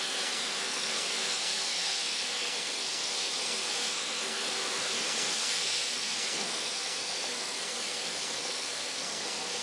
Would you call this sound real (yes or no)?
no